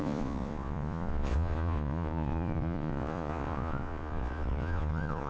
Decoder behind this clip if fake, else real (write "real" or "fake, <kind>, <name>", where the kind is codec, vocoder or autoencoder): fake, vocoder, Vocos